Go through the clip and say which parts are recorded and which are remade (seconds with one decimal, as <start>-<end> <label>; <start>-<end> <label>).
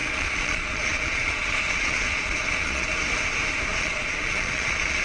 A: 0.0-3.0 remade; 3.0-3.7 recorded; 3.7-5.0 remade